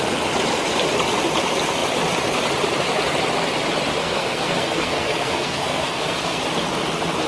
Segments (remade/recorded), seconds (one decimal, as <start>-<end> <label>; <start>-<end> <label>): 0.0-4.0 recorded; 4.0-6.4 remade; 6.4-7.3 recorded